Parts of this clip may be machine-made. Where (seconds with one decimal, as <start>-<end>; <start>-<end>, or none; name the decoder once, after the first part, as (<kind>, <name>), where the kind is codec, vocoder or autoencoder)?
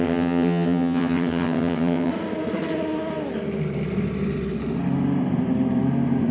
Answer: 0.0-2.1 (vocoder, HiFi-GAN)